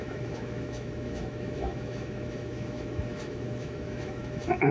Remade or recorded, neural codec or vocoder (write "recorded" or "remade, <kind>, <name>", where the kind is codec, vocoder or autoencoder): remade, autoencoder, DAC-VAE